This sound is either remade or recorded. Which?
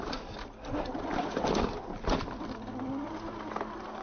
recorded